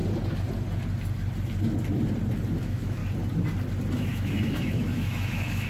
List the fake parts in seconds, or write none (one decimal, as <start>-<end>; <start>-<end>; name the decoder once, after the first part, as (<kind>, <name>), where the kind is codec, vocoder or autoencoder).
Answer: 2.6-3.0 (autoencoder, DAC-VAE); 4.0-5.7